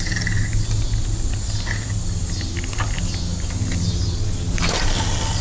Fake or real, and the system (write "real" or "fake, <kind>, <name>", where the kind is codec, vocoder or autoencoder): real